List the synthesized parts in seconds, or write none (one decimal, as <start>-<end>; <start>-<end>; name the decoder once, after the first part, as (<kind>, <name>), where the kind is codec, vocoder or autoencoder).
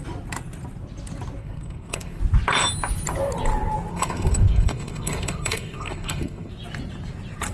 1.4-2.2 (codec, SNAC); 3.9-6.5